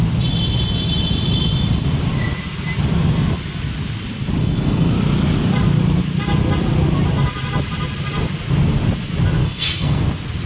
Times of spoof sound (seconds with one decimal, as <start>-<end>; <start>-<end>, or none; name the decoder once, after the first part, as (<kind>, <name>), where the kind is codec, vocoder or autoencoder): 4.4-4.9 (codec, SNAC); 9.4-10.0